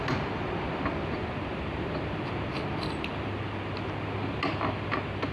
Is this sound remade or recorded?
recorded